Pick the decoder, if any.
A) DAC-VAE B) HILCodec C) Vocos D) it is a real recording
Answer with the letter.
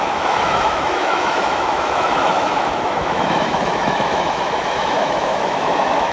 A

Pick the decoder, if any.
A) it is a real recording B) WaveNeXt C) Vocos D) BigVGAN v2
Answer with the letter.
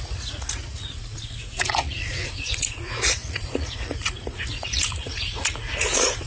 C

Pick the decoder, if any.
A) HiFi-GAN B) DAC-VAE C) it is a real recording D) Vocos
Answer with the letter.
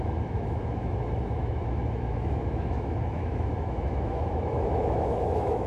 B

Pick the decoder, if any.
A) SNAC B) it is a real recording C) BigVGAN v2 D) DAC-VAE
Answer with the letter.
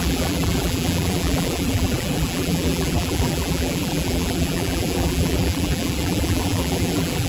C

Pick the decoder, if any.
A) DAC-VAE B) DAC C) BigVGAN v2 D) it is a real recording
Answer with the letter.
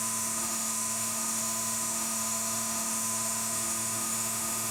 A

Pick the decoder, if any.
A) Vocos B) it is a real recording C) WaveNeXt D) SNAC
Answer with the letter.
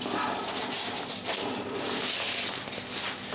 B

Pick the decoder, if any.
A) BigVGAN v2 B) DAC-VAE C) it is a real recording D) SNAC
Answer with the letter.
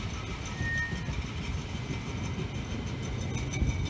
C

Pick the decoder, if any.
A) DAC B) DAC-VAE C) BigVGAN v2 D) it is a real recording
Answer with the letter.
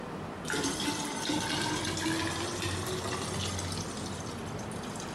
D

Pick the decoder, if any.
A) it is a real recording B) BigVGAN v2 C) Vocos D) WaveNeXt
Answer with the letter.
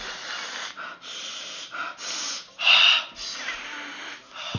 A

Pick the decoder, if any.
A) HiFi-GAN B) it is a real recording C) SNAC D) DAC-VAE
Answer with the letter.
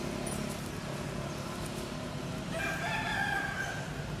B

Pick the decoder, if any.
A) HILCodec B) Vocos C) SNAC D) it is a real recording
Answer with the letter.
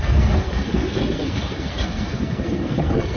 C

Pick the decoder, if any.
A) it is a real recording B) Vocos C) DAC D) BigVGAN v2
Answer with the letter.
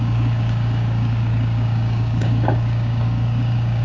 C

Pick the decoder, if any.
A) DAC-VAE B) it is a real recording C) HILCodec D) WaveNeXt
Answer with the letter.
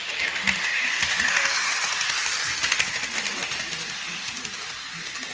B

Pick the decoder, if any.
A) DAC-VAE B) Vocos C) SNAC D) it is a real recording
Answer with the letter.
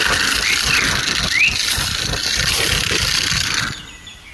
D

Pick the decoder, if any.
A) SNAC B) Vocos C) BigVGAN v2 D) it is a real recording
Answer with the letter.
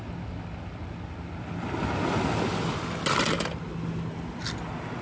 D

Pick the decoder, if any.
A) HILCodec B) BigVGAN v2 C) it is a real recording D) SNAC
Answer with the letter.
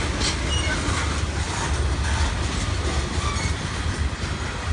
C